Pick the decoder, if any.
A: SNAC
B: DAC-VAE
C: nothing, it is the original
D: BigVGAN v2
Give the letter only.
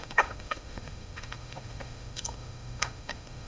B